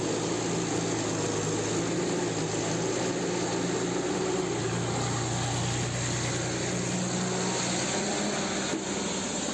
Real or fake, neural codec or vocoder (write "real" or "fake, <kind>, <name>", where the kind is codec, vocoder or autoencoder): real